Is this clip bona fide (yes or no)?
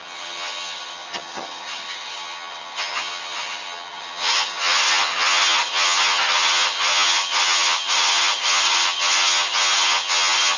no